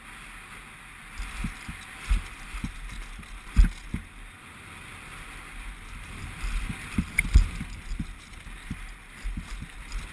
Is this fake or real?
real